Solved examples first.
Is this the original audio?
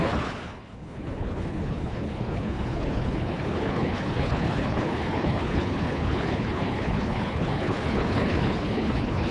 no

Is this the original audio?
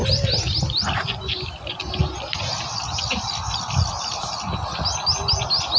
yes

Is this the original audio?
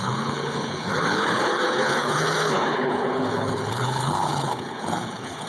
no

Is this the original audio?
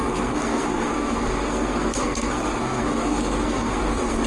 no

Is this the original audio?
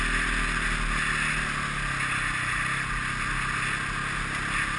yes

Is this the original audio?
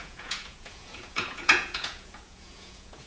no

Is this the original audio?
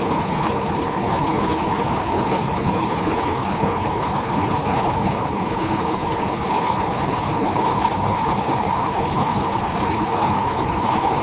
no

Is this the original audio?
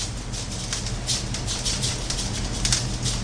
yes